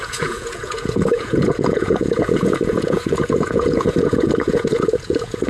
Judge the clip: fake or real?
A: fake